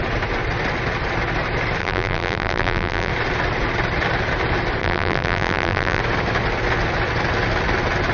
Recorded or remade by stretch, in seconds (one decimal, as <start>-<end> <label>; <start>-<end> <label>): 0.0-1.8 recorded; 1.8-3.1 remade; 3.1-4.8 recorded; 4.8-6.0 remade; 6.0-8.1 recorded